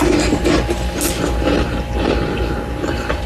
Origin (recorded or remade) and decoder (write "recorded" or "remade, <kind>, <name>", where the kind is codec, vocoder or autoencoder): recorded